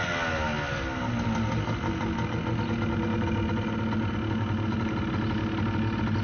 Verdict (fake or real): real